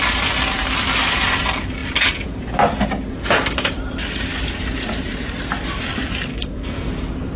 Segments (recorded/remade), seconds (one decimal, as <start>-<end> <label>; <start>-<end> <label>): 0.0-6.3 recorded; 6.3-6.9 remade; 6.9-7.4 recorded